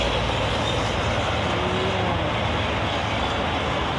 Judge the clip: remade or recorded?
recorded